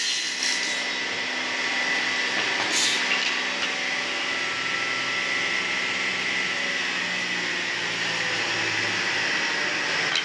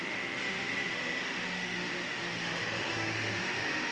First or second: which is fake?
second